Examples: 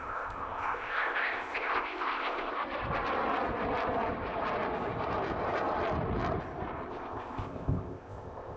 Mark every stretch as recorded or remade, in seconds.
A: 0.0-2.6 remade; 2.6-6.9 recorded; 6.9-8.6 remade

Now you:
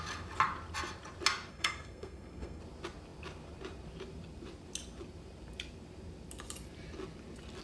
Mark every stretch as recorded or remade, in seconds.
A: 0.0-1.5 recorded; 1.5-2.6 remade; 2.6-7.6 recorded

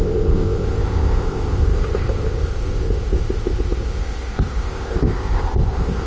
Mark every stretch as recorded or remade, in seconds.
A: 0.0-6.1 remade

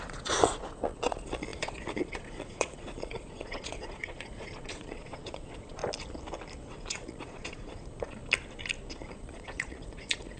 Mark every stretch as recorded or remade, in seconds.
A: 0.0-5.8 remade; 5.8-6.7 recorded; 6.7-8.2 remade; 8.2-9.1 recorded; 9.1-10.4 remade

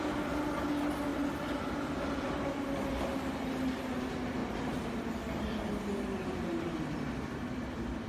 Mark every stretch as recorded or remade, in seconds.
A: 0.0-8.1 recorded

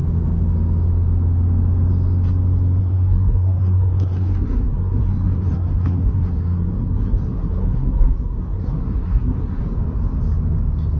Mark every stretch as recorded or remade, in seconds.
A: 0.0-2.8 recorded; 2.8-9.6 remade; 9.6-11.0 recorded

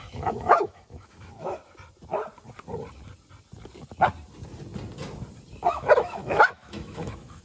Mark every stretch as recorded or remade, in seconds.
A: 0.0-1.6 remade; 1.6-5.7 recorded; 5.7-7.4 remade